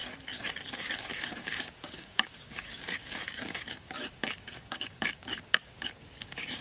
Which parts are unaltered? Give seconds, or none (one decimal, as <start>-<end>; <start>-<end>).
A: 0.0-0.7